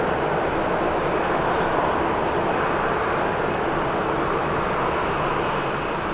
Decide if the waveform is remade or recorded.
recorded